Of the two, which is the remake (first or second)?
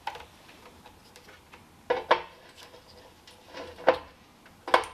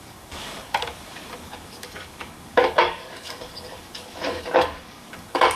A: second